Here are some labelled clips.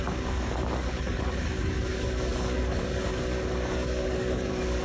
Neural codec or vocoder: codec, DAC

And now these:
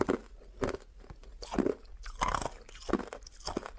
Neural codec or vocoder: none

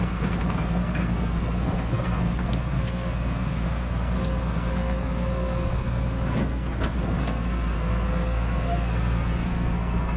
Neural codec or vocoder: codec, SNAC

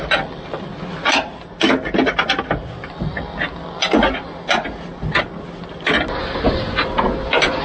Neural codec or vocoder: none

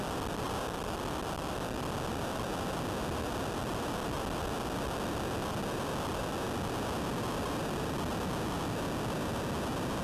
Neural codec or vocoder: vocoder, BigVGAN v2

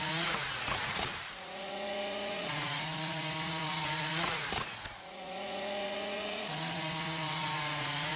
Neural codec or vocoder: vocoder, Vocos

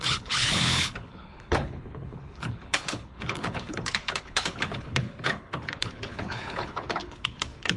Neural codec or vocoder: codec, HILCodec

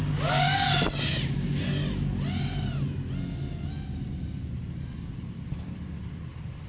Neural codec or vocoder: none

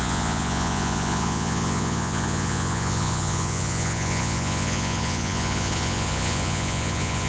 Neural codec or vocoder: vocoder, Vocos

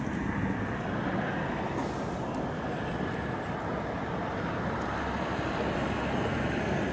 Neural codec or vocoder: none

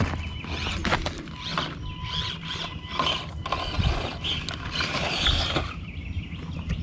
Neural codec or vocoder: none